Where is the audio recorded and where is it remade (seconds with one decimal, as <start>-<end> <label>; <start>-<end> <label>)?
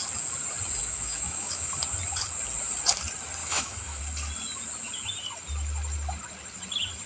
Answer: 0.0-0.8 recorded; 0.8-1.7 remade; 1.7-3.4 recorded; 3.4-4.0 remade; 4.0-7.1 recorded